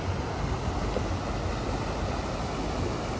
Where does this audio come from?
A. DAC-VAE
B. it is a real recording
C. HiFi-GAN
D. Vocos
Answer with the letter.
B